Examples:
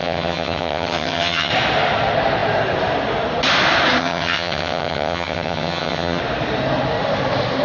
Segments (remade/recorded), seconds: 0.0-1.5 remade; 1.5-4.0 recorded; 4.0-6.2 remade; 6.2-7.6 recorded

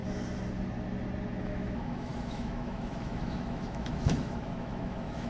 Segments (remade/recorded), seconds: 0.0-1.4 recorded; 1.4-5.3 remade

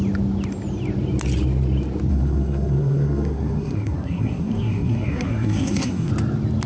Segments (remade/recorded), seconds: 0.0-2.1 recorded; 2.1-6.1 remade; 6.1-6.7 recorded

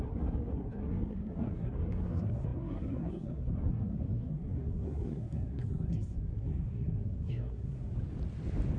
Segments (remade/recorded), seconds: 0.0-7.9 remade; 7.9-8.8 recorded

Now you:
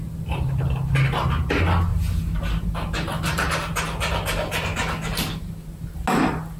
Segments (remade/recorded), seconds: 0.0-6.6 recorded

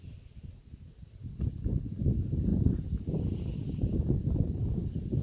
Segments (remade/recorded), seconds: 0.0-5.2 recorded